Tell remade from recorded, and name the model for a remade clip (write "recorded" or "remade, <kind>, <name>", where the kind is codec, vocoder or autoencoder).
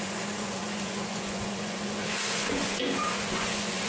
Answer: remade, vocoder, Vocos